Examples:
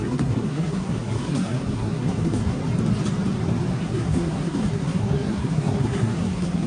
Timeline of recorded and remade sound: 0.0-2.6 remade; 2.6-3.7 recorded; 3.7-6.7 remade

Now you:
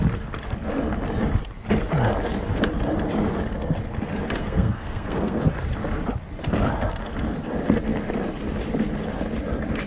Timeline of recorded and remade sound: 0.0-4.4 recorded; 4.4-5.4 remade; 5.4-9.9 recorded

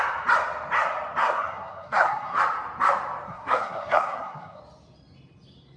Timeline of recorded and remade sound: 0.0-1.2 recorded; 1.2-2.4 remade; 2.4-3.3 recorded; 3.3-4.6 remade; 4.6-5.8 recorded

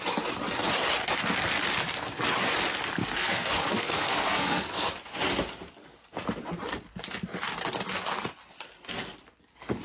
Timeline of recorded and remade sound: 0.0-3.0 recorded; 3.0-4.9 remade; 4.9-9.8 recorded

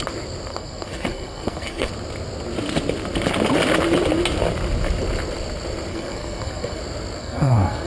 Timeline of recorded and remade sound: 0.0-0.5 recorded; 0.5-1.9 remade; 1.9-5.9 recorded; 5.9-6.8 remade; 6.8-7.2 recorded; 7.2-7.9 remade

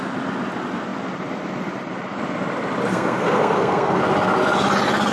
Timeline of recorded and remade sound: 0.0-2.9 recorded; 2.9-4.0 remade; 4.0-5.1 recorded